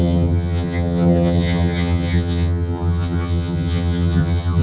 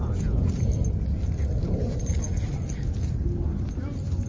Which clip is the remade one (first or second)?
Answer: first